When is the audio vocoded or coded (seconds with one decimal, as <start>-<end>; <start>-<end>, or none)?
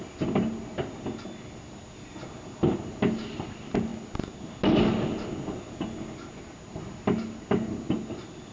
none